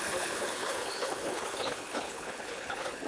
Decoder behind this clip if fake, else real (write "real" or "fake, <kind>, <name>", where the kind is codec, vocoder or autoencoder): fake, codec, HILCodec